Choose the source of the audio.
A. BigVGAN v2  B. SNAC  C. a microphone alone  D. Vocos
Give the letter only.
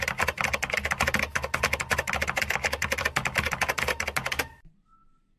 C